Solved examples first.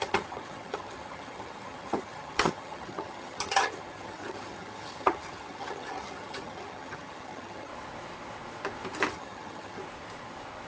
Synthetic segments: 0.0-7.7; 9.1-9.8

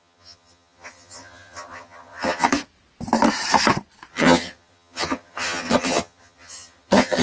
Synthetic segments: 0.0-2.5; 4.1-7.2

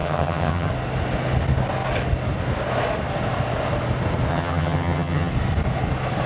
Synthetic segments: 0.0-0.7; 4.3-5.3

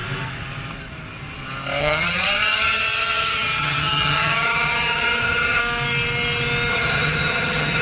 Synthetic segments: 1.8-5.6; 6.7-7.8

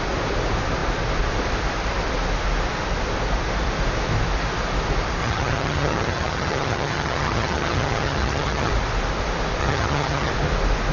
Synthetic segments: 5.2-8.7; 9.6-10.3

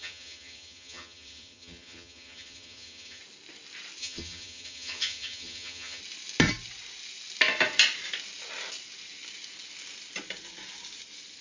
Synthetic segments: 0.0-3.2; 4.0-6.0

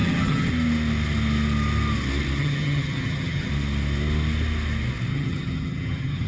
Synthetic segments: 0.0-0.5; 2.4-3.5; 5.1-6.3